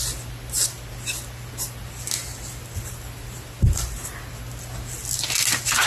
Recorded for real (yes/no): yes